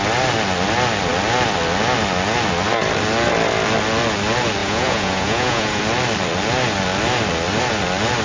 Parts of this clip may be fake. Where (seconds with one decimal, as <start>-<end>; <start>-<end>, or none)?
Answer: 4.6-5.8